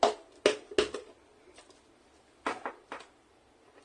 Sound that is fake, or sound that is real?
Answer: real